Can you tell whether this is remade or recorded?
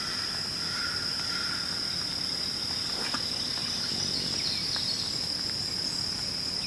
recorded